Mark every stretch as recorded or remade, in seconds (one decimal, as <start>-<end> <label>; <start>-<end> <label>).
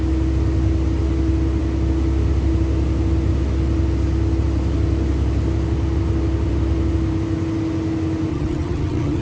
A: 0.0-8.3 recorded; 8.3-9.2 remade